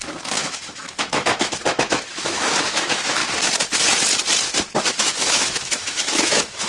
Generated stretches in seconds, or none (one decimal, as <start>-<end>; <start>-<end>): 0.0-3.2; 4.9-6.7